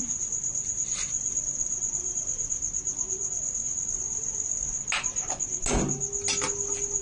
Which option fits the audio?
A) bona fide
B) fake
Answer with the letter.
A